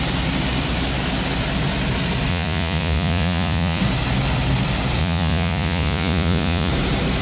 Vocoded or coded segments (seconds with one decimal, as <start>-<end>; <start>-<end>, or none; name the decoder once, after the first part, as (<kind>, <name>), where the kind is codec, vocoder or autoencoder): 2.3-3.8 (vocoder, Vocos); 5.0-6.7